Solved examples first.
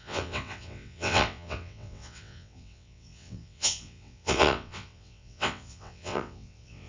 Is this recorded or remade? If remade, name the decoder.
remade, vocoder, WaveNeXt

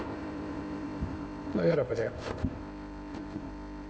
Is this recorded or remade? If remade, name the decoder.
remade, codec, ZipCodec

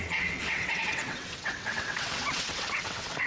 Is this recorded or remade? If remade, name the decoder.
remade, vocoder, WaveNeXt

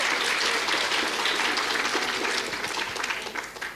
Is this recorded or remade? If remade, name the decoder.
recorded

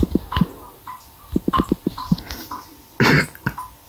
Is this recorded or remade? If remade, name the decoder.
recorded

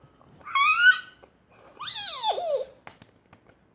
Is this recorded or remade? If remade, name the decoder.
recorded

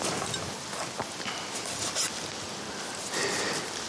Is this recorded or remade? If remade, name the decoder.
remade, vocoder, BigVGAN v2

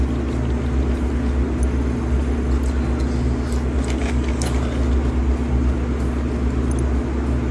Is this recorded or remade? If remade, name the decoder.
recorded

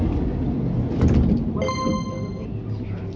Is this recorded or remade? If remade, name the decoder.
recorded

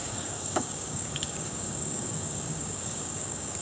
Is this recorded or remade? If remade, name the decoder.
remade, codec, DAC